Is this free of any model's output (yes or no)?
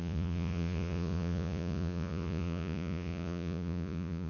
no